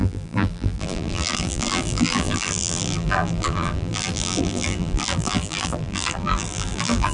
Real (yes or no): no